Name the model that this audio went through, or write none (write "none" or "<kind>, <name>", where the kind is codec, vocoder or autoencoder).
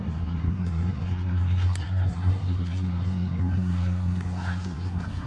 codec, SNAC